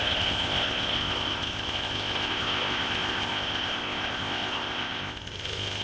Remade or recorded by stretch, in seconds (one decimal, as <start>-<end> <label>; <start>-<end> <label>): 0.0-5.8 remade